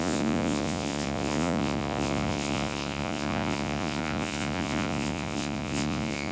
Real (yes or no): no